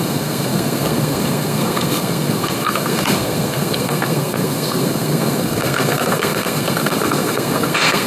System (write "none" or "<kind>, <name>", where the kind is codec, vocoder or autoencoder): codec, SNAC